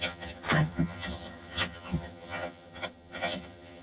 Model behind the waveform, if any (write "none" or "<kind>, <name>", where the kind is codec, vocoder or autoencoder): vocoder, HiFi-GAN